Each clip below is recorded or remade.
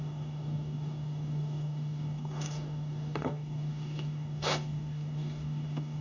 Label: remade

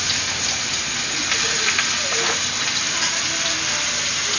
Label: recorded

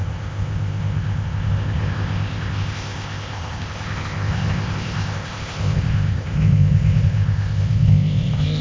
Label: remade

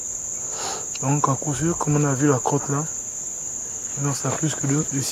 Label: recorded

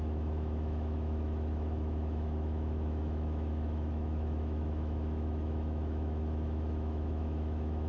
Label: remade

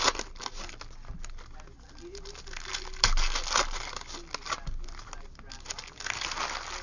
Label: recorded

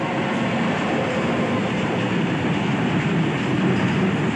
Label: recorded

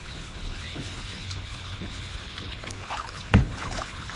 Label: remade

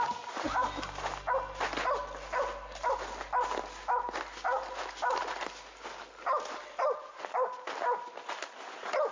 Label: recorded